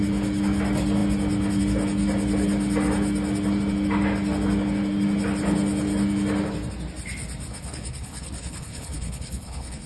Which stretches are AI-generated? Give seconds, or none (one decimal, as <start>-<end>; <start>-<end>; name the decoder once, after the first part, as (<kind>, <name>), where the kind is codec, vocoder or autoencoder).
7.5-9.9 (codec, HILCodec)